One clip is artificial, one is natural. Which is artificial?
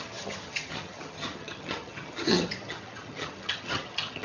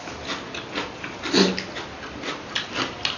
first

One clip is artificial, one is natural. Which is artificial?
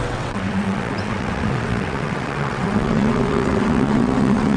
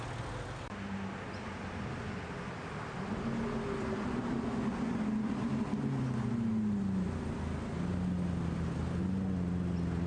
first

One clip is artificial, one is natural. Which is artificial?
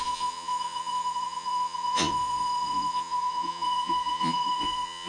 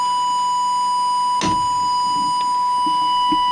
first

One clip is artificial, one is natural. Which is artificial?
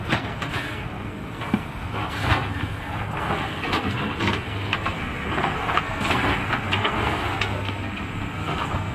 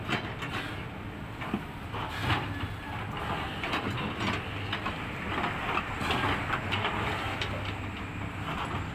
first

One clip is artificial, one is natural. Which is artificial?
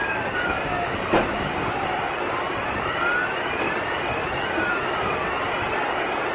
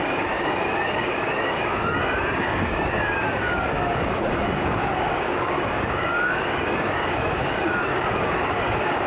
second